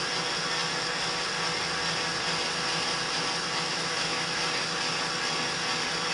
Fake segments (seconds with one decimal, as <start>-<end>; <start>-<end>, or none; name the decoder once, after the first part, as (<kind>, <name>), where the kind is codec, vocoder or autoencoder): 3.7-4.4 (autoencoder, DAC-VAE)